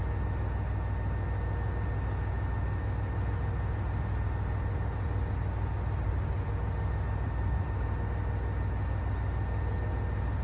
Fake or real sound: real